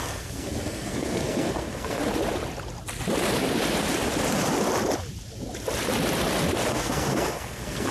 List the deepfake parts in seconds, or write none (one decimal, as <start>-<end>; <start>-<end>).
0.0-2.0; 6.7-7.9